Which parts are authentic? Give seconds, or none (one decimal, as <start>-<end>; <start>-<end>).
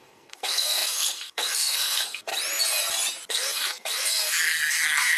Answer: 2.3-3.3